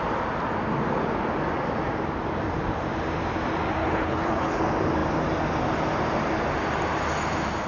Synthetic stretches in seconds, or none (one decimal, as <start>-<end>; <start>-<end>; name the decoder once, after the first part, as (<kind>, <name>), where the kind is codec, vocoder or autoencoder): 3.8-4.6 (codec, HILCodec)